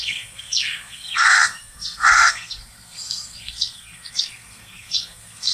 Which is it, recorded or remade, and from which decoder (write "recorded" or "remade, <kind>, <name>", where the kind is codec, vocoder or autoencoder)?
remade, codec, SNAC